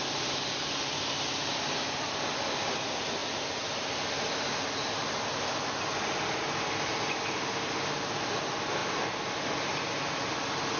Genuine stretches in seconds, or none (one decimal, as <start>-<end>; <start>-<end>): 0.0-10.8